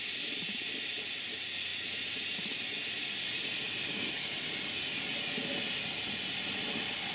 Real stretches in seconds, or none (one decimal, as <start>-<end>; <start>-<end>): 0.0-7.1